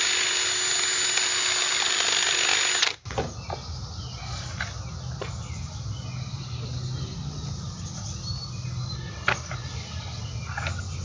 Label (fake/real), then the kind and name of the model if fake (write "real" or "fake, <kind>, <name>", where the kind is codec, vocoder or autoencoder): real